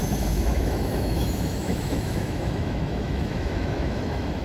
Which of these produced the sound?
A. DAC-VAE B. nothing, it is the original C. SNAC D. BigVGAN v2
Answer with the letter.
A